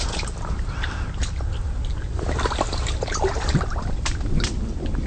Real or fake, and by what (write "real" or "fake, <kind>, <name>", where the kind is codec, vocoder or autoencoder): real